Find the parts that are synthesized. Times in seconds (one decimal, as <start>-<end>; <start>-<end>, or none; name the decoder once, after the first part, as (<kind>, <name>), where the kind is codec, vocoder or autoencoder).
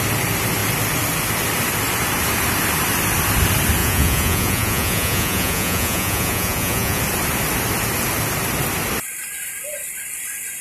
3.8-7.0 (vocoder, Vocos)